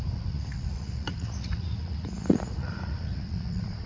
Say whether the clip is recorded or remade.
remade